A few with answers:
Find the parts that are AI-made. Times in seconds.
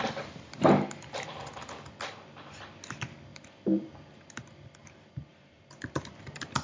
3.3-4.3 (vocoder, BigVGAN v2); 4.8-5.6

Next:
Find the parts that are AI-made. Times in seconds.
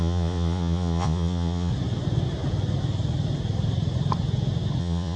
0.0-1.7 (vocoder, Vocos); 4.8-5.2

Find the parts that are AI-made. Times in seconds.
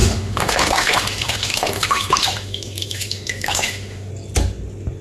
0.0-4.1 (autoencoder, DAC-VAE)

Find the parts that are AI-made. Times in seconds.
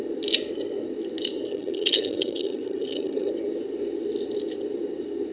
1.5-3.3 (vocoder, HiFi-GAN)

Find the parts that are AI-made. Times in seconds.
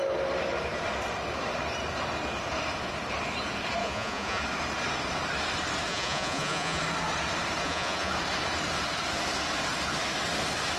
3.8-4.4 (vocoder, Vocos); 5.9-6.8; 7.6-8.1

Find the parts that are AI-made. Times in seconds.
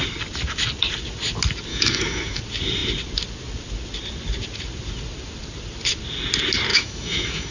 1.7-2.4 (autoencoder, DAC-VAE); 6.7-7.5